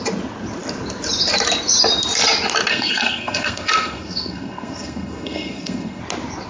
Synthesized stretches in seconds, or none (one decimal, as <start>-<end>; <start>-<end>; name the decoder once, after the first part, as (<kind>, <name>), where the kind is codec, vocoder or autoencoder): 2.7-6.0 (codec, SNAC)